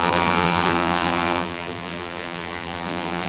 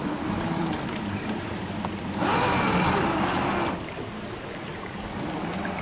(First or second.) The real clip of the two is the second